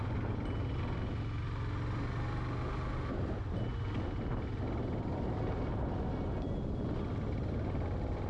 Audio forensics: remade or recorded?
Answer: recorded